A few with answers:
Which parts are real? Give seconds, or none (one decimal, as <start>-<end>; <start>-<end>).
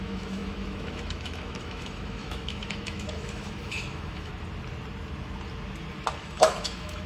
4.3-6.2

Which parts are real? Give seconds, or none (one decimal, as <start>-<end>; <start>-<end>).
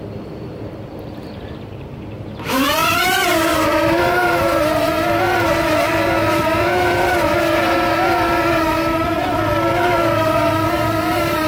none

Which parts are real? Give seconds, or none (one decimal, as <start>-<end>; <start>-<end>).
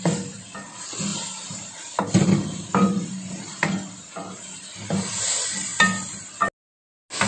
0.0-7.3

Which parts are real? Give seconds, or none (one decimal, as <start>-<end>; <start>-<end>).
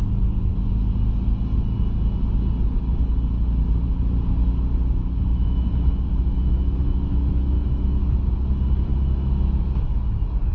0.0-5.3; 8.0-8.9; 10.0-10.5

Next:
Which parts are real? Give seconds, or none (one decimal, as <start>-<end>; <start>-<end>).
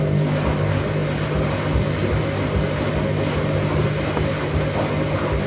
0.0-5.5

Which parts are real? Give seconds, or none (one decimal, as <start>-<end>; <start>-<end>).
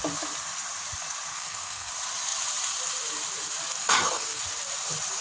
0.0-1.3; 1.9-3.8; 4.4-5.2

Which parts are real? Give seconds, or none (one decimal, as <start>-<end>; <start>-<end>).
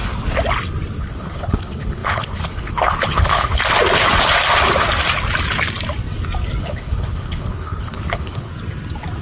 0.0-1.0; 3.6-6.6; 8.5-9.2